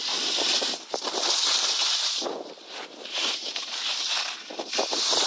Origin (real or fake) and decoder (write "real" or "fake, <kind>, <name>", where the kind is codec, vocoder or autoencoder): real